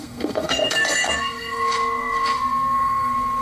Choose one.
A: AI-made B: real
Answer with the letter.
A